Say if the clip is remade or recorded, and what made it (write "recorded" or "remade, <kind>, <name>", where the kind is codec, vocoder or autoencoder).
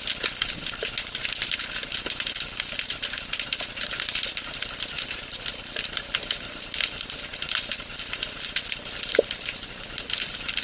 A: recorded